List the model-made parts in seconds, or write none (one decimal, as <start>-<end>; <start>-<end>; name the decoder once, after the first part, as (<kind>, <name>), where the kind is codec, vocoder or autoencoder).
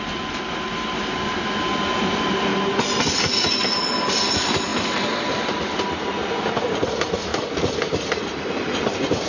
none